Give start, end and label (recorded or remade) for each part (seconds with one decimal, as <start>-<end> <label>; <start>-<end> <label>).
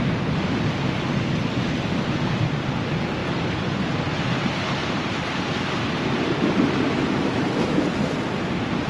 0.0-4.8 recorded; 4.8-5.4 remade; 5.4-8.9 recorded